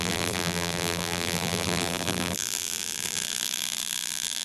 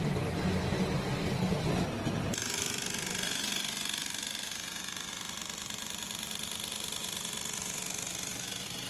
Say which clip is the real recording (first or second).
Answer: second